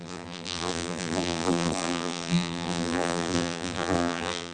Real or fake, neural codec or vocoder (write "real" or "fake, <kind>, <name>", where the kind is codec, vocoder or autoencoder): fake, vocoder, BigVGAN v2